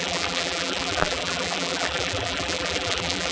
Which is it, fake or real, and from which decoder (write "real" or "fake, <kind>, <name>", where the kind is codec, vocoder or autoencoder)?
fake, vocoder, BigVGAN v2